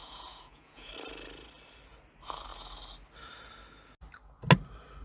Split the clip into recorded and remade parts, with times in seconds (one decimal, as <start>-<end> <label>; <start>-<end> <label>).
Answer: 0.0-0.9 remade; 0.9-5.0 recorded